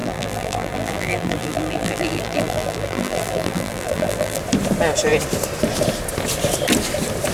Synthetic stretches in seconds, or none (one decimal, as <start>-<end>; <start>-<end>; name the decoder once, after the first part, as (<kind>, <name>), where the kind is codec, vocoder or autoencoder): 0.0-4.4 (vocoder, BigVGAN v2)